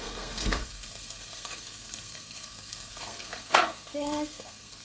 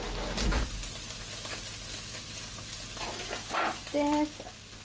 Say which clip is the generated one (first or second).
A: first